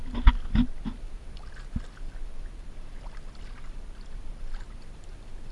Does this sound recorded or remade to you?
recorded